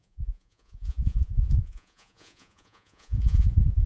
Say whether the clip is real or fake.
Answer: fake